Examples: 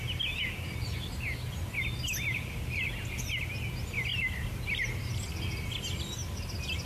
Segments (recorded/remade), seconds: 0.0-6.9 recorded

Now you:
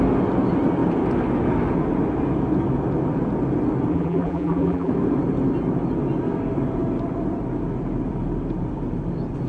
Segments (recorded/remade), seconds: 0.0-3.9 recorded; 3.9-4.9 remade; 4.9-9.5 recorded

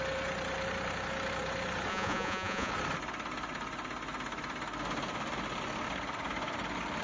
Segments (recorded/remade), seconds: 0.0-1.9 recorded; 1.9-2.7 remade; 2.7-7.0 recorded

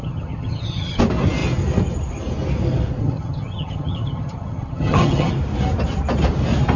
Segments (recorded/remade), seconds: 0.0-1.0 remade; 1.0-3.0 recorded; 3.0-5.3 remade; 5.3-6.8 recorded